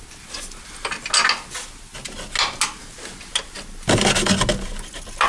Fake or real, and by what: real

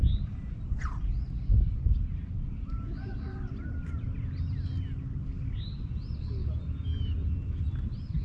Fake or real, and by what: real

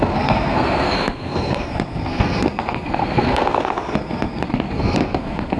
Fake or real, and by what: fake, codec, SNAC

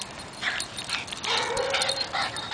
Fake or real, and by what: real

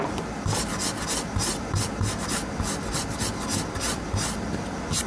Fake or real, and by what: real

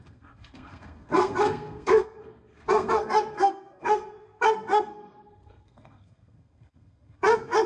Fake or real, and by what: fake, codec, SNAC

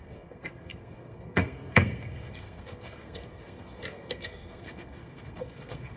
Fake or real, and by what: fake, codec, SNAC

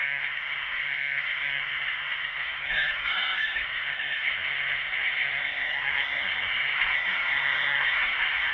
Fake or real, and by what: fake, codec, SNAC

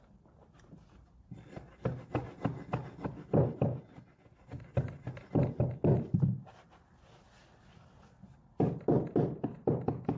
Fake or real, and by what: real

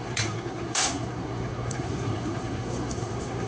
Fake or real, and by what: fake, codec, SNAC